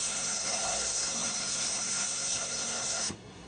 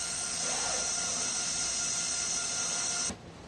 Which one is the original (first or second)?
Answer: second